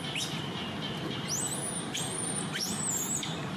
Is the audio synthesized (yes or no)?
no